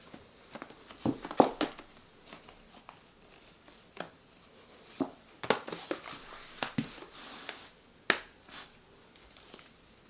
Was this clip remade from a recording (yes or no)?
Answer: no